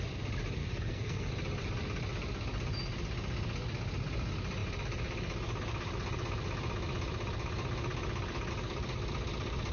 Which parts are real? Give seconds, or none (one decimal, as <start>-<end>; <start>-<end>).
0.0-0.6; 1.3-9.7